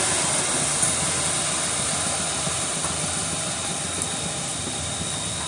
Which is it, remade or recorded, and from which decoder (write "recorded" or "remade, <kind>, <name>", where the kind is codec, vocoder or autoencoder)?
recorded